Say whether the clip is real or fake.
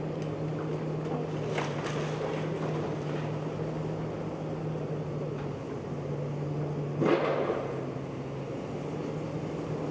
real